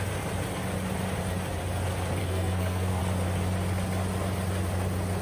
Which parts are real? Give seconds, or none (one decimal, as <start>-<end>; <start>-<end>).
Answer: 0.0-2.2; 3.0-5.2

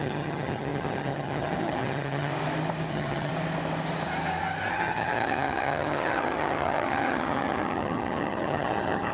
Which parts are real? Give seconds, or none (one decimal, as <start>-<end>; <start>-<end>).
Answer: 2.3-2.9; 3.3-4.7